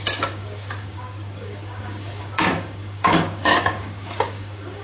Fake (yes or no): yes